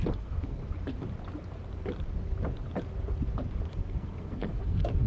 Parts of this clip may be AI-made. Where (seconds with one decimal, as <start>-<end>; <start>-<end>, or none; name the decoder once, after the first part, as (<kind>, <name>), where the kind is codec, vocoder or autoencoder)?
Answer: 0.0-0.6 (codec, SNAC); 3.7-5.1